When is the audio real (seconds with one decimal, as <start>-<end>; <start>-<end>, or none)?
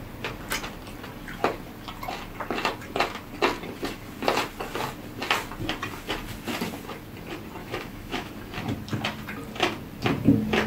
0.0-7.6; 8.3-10.7